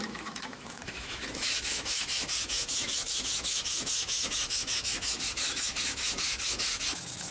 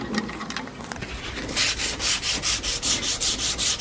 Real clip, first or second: second